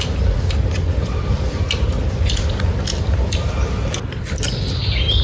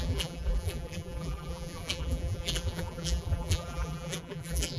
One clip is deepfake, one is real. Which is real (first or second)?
first